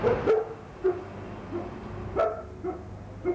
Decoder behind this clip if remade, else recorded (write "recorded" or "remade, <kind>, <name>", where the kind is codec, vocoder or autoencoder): recorded